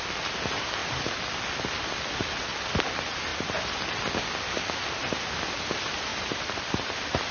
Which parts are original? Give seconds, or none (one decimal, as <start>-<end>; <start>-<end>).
0.8-2.1; 3.3-4.8